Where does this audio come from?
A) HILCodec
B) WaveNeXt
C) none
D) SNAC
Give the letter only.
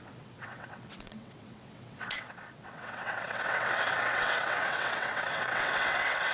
B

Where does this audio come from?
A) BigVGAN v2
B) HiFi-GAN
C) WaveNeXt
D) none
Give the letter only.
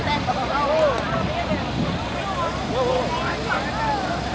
D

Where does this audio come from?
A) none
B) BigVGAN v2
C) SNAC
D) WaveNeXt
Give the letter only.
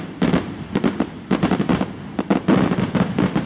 A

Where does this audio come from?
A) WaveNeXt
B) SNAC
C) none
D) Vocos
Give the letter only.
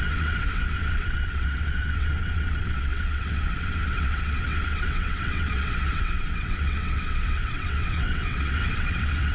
A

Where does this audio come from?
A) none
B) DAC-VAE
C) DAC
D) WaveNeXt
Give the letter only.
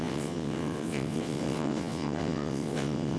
D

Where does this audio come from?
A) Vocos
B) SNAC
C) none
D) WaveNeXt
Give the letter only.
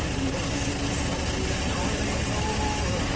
C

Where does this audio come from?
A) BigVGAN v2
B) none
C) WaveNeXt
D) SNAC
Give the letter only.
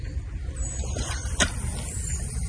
B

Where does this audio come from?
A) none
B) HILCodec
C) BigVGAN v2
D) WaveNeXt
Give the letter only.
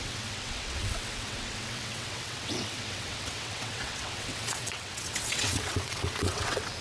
D